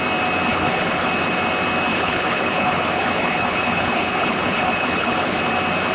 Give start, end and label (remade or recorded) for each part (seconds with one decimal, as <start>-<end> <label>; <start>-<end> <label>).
0.0-0.5 recorded; 0.5-1.1 remade; 1.1-1.9 recorded; 1.9-5.4 remade; 5.4-5.9 recorded